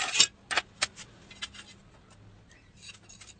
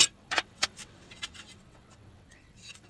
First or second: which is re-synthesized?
second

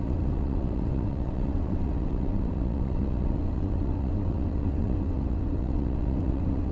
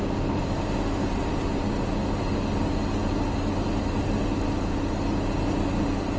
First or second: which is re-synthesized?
first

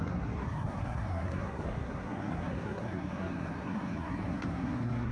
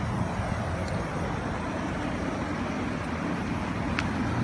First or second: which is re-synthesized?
first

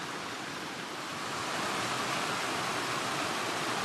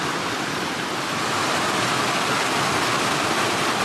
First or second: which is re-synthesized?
first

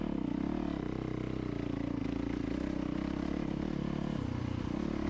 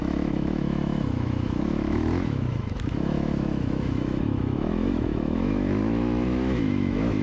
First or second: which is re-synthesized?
second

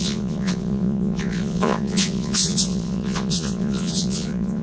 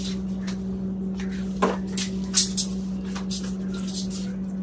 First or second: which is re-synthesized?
first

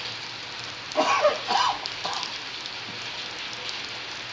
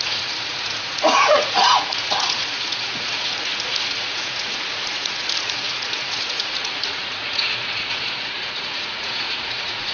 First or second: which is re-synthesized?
second